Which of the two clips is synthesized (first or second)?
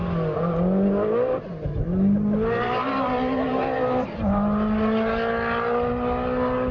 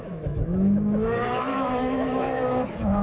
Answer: second